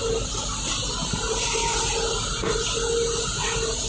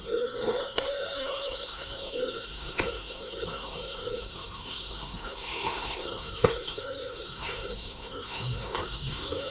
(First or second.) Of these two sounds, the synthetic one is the second